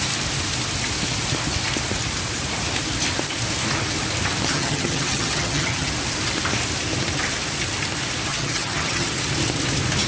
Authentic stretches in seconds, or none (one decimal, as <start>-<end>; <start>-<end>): 0.0-4.5; 5.9-8.3; 9.1-10.1